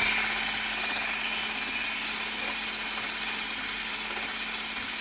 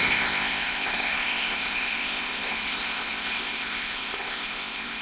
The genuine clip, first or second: first